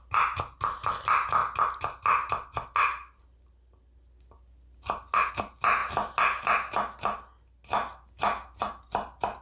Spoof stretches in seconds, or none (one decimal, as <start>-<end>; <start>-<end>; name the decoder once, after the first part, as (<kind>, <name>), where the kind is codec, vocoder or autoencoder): none